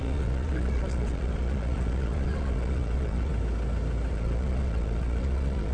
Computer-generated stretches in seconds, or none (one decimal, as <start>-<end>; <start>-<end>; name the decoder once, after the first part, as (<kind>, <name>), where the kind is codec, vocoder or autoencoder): 0.0-3.3 (vocoder, Vocos); 4.1-5.7